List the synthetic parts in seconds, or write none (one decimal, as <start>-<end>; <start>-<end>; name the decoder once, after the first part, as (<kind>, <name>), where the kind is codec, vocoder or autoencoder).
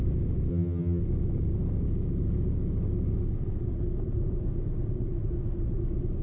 0.5-1.0 (vocoder, HiFi-GAN)